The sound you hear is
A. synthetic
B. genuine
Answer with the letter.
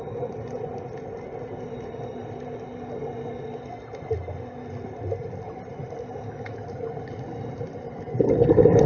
B